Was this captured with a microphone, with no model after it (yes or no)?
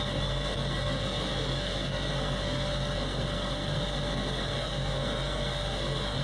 no